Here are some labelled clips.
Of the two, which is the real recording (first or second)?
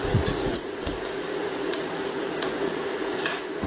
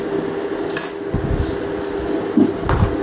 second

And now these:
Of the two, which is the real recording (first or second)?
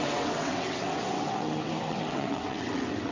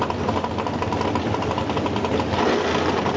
second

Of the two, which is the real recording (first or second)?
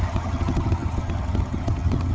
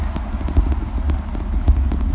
second